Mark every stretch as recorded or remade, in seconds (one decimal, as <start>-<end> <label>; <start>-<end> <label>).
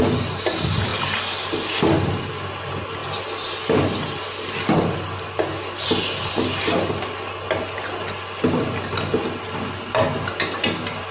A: 0.0-11.1 recorded